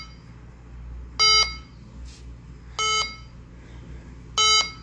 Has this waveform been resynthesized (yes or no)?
no